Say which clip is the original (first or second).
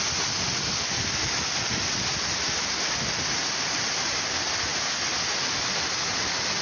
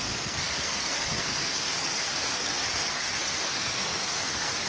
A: first